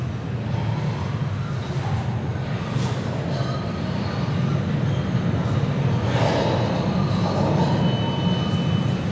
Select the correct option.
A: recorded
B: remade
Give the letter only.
A